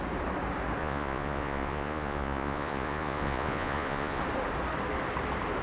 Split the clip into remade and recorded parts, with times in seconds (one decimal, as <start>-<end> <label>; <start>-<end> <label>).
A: 0.0-0.8 recorded; 0.8-4.2 remade; 4.2-5.6 recorded